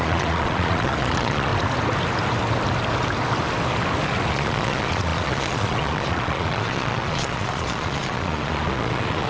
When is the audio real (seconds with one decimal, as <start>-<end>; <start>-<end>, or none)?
1.5-4.3